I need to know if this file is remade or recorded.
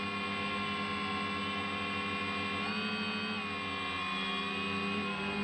recorded